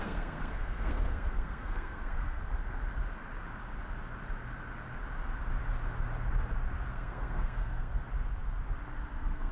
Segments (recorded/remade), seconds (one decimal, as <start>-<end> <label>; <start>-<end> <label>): 0.0-2.4 remade; 2.4-6.9 recorded; 6.9-7.9 remade; 7.9-9.1 recorded; 9.1-9.5 remade